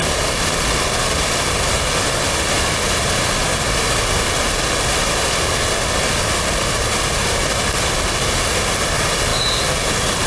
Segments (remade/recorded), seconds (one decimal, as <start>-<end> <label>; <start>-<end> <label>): 0.0-10.3 recorded